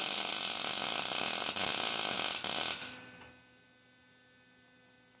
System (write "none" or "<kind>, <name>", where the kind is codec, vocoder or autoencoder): none